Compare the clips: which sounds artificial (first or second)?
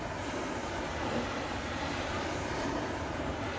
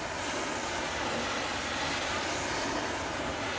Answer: first